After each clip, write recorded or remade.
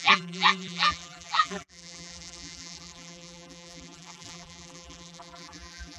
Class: remade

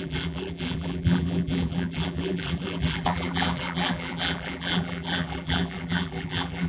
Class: remade